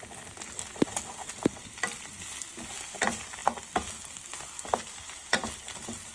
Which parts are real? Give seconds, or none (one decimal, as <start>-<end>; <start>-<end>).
0.0-6.1